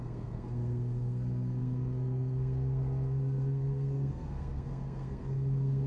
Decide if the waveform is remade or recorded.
remade